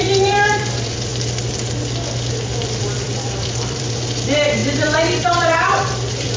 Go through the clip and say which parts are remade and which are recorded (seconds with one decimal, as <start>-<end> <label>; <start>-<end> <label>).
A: 0.0-1.1 remade; 1.1-2.8 recorded; 2.8-6.4 remade